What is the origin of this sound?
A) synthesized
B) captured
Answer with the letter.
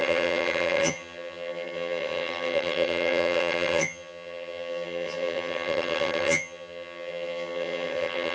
A